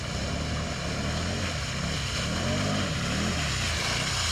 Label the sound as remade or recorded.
recorded